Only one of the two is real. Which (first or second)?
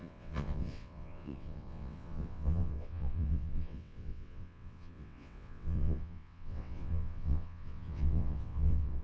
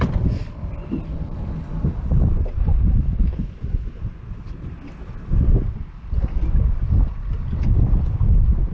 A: second